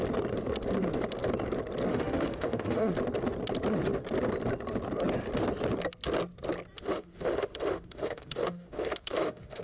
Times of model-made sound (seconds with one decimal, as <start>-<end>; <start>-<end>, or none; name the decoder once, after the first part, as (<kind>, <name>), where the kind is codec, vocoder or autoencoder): 1.9-2.9 (autoencoder, DAC-VAE); 6.8-9.6